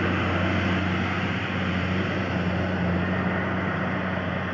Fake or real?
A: real